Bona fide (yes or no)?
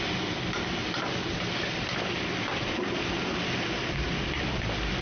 yes